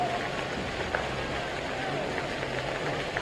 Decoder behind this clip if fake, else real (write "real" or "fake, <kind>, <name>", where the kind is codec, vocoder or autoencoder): real